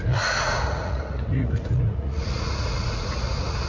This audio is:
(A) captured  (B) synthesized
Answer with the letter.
B